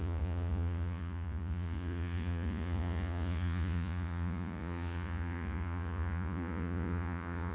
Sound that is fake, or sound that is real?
fake